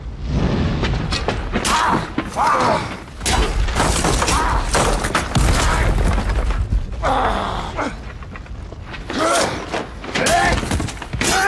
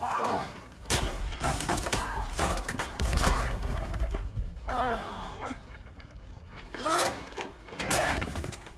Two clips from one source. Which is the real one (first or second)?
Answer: first